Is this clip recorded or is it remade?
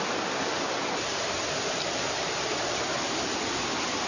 recorded